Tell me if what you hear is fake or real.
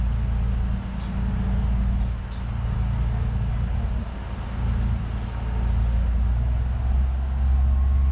real